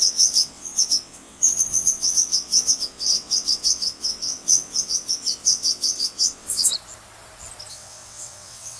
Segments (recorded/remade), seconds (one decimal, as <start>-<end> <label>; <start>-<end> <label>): 0.0-6.7 remade; 6.7-7.7 recorded; 7.7-8.8 remade